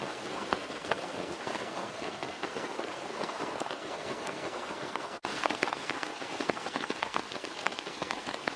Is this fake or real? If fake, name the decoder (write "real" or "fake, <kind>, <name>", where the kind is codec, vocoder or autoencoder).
fake, codec, SNAC